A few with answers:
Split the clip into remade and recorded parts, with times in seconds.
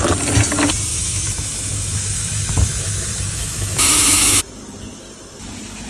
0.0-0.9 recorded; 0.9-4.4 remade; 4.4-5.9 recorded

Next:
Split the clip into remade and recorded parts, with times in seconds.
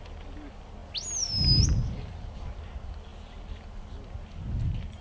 0.0-5.0 recorded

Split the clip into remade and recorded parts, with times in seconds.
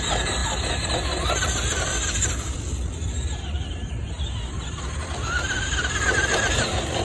0.0-7.0 recorded